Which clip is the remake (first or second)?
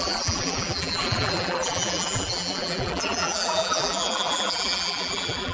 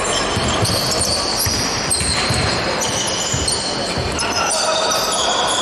first